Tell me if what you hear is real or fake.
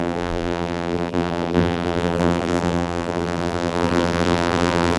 fake